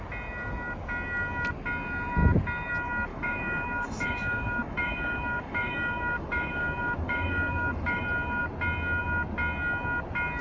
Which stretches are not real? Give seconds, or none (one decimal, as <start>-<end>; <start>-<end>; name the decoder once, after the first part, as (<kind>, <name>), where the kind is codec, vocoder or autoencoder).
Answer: 3.1-8.0 (autoencoder, DAC-VAE)